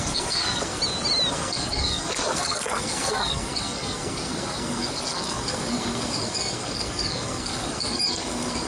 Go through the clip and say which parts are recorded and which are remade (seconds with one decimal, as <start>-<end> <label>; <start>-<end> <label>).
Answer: 0.0-0.8 remade; 0.8-1.3 recorded; 1.3-8.7 remade